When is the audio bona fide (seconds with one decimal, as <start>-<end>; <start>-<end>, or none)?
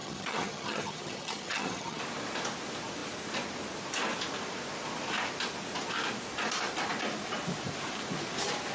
2.0-8.7